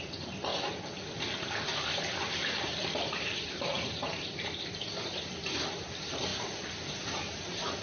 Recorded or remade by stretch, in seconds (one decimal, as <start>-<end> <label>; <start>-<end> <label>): 0.0-0.5 remade; 0.5-2.6 recorded; 2.6-7.8 remade